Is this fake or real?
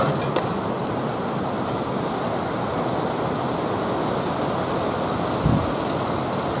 real